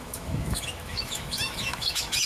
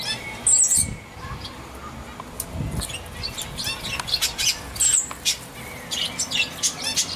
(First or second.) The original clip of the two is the second